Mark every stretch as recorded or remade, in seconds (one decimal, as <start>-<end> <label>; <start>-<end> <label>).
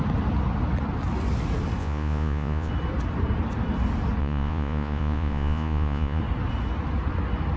0.0-1.8 recorded; 1.8-2.7 remade; 2.7-4.2 recorded; 4.2-6.2 remade; 6.2-7.6 recorded